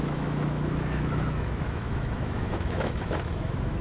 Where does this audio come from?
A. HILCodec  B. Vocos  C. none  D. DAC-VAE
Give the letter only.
D